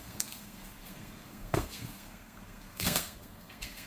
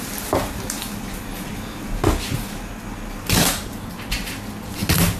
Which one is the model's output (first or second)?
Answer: first